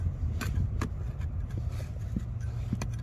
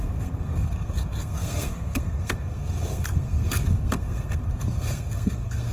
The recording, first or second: first